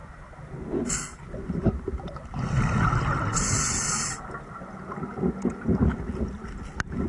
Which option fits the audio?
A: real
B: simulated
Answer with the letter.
A